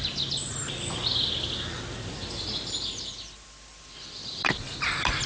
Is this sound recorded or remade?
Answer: recorded